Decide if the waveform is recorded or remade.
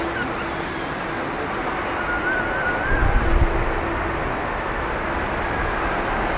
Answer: recorded